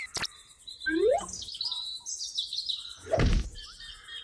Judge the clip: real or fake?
real